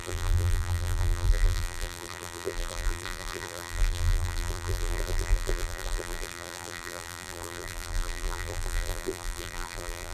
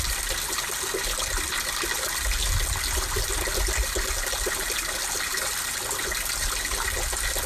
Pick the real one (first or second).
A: second